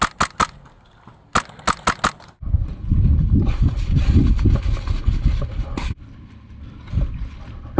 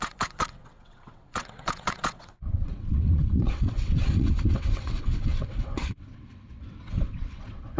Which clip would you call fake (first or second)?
second